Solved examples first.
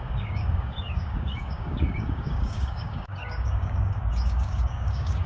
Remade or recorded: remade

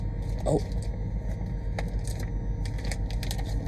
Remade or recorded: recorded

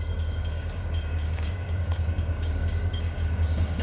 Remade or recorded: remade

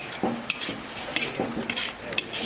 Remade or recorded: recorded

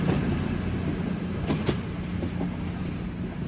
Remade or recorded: recorded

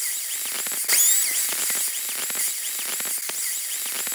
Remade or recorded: recorded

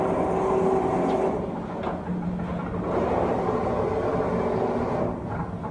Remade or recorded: recorded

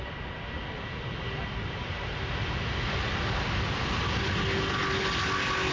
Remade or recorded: recorded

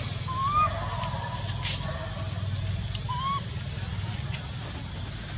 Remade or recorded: recorded